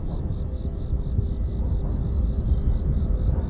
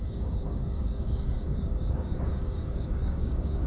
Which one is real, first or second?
first